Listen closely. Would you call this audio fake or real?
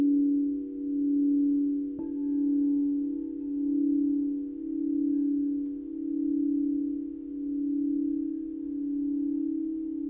real